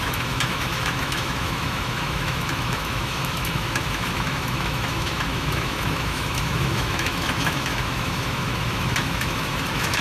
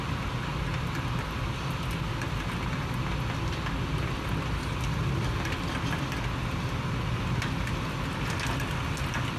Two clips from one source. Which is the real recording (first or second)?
second